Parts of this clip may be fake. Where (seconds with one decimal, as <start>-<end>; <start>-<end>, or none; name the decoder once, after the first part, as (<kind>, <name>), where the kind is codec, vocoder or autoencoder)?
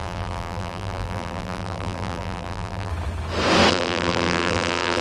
0.0-2.9 (vocoder, BigVGAN v2); 3.7-5.0